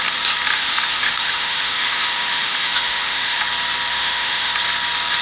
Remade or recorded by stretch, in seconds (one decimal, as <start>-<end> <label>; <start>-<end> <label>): 0.0-0.5 recorded; 0.5-3.4 remade; 3.4-3.9 recorded; 3.9-4.5 remade; 4.5-5.2 recorded